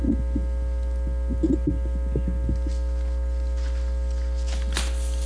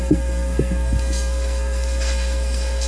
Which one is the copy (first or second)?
second